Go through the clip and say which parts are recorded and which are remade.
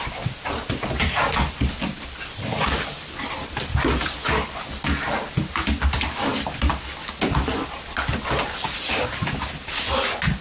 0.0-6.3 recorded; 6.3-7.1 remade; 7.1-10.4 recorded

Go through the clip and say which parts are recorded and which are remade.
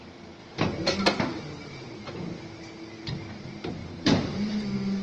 0.0-0.4 recorded; 0.4-2.5 remade; 2.5-3.8 recorded; 3.8-4.5 remade; 4.5-5.0 recorded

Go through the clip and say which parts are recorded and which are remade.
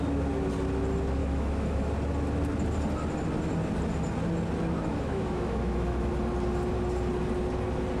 0.0-1.2 recorded; 1.2-1.8 remade; 1.8-4.9 recorded; 4.9-6.1 remade; 6.1-8.0 recorded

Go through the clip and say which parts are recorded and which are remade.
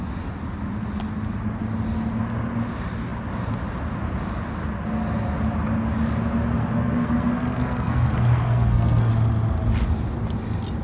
0.0-6.6 recorded; 6.6-9.1 remade; 9.1-10.8 recorded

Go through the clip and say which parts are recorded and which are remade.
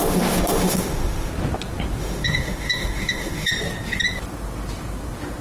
0.0-1.3 remade; 1.3-2.0 recorded; 2.0-3.5 remade; 3.5-5.4 recorded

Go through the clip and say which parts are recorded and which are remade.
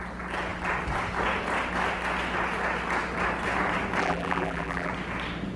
0.0-4.0 recorded; 4.0-4.9 remade; 4.9-5.6 recorded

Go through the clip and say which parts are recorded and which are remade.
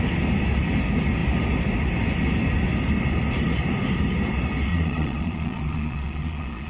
0.0-4.7 recorded; 4.7-6.7 remade